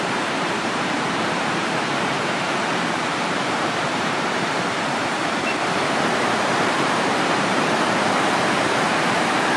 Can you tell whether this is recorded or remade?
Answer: remade